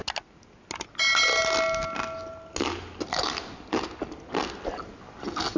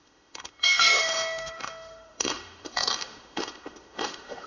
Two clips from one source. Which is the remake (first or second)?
second